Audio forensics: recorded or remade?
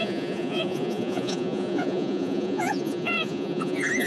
remade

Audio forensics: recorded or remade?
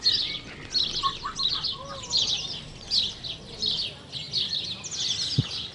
recorded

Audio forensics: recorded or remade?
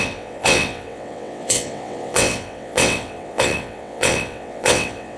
remade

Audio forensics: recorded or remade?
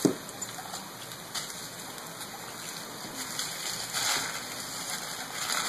recorded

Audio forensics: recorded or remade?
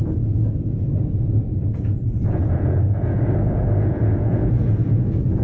remade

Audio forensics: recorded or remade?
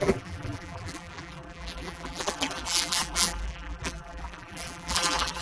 remade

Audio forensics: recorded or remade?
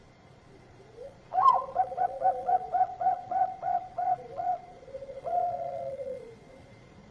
remade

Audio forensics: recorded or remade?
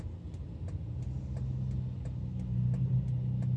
recorded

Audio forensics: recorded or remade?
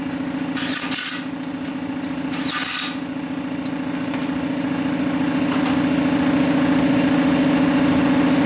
recorded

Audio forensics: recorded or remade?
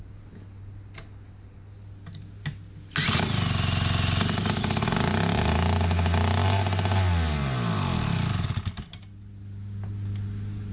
recorded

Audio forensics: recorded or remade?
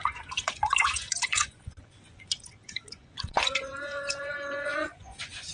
remade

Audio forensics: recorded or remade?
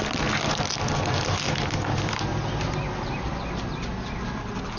recorded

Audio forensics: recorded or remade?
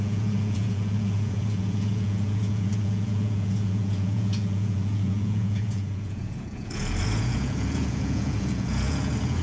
remade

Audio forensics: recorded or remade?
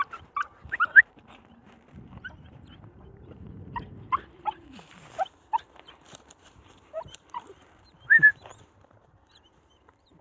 remade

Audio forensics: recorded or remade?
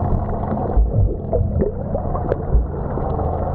recorded